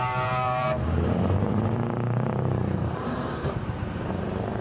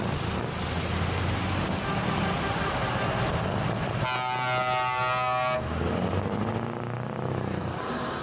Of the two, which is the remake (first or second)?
first